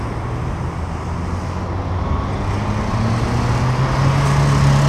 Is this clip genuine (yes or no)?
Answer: yes